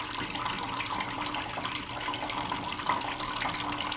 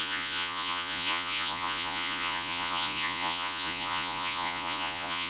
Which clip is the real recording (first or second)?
first